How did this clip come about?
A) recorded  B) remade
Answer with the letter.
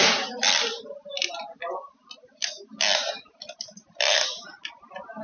A